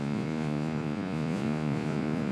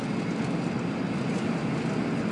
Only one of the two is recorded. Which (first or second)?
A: second